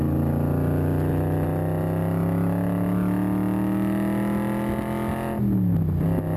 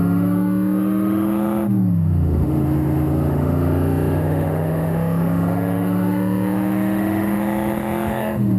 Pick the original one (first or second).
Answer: first